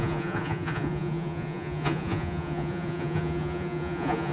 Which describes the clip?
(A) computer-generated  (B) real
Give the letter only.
A